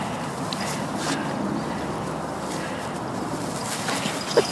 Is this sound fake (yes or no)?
no